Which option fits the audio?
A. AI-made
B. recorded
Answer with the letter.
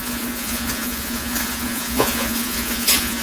A